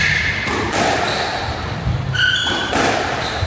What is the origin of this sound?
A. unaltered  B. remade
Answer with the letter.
A